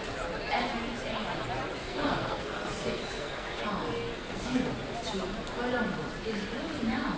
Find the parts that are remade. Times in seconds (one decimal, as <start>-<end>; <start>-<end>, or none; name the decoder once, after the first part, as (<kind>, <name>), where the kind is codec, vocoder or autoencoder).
1.8-3.6 (codec, SNAC); 4.1-4.7